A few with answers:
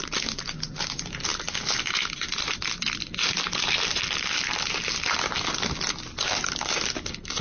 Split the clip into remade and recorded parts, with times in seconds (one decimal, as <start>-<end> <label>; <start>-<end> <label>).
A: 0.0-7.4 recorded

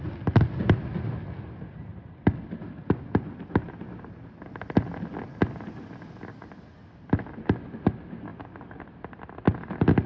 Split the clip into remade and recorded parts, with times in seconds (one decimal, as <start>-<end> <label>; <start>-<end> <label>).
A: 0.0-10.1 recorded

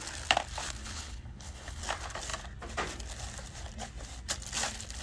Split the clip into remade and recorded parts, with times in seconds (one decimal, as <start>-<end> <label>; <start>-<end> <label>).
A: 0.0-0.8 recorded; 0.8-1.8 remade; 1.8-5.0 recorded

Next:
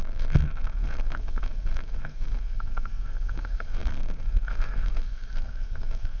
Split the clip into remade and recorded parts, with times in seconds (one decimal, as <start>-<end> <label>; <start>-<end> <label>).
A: 0.0-6.2 remade

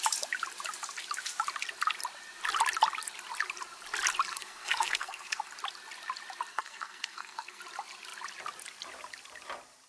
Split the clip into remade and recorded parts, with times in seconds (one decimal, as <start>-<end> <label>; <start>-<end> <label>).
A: 0.0-4.3 recorded; 4.3-5.4 remade; 5.4-6.5 recorded; 6.5-7.6 remade; 7.6-9.9 recorded